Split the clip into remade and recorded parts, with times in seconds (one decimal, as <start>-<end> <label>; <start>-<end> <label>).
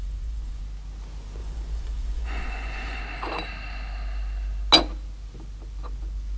0.0-0.6 remade; 0.6-1.4 recorded; 1.4-3.0 remade; 3.0-6.4 recorded